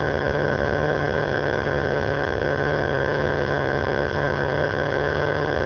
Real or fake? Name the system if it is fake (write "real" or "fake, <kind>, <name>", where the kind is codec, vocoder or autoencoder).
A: fake, vocoder, HiFi-GAN